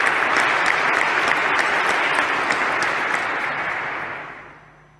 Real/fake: real